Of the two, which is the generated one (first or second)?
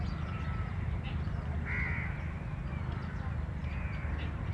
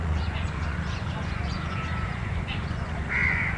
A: second